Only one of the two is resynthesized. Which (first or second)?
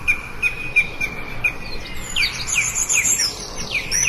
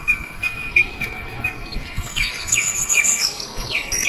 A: second